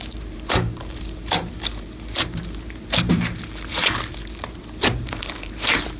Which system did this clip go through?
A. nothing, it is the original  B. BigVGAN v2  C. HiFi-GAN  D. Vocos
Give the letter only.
B